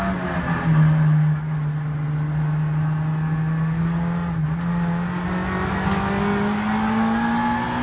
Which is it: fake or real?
real